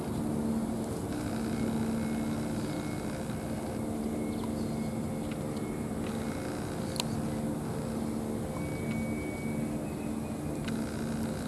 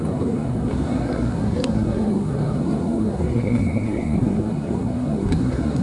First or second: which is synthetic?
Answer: second